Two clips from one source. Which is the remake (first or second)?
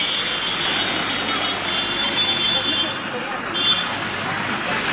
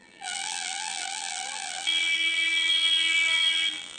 second